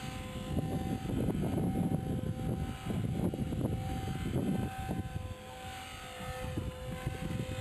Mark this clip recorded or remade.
recorded